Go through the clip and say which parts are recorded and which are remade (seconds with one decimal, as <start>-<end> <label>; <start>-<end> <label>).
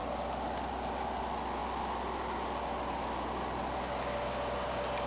0.0-5.1 recorded